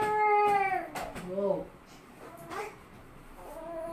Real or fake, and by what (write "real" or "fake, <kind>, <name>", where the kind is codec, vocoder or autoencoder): real